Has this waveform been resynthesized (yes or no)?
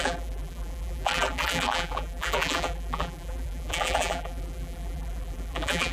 yes